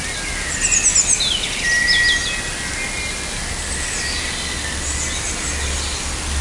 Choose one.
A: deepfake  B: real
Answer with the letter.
B